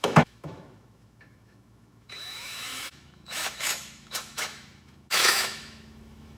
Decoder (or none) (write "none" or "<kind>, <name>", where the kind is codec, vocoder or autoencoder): autoencoder, DAC-VAE